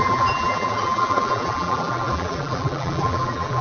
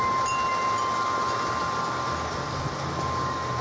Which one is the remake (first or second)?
first